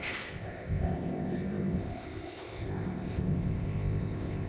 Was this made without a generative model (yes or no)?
no